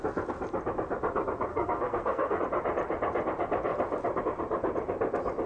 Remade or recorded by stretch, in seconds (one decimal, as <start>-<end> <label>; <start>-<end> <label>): 0.0-1.5 recorded; 1.5-2.4 remade; 2.4-5.5 recorded